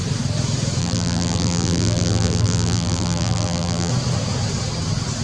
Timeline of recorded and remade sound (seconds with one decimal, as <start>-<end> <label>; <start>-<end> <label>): 0.0-0.8 recorded; 0.8-3.9 remade; 3.9-5.2 recorded